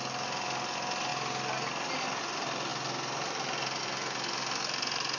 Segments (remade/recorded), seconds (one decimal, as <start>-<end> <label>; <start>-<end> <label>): 0.0-5.2 recorded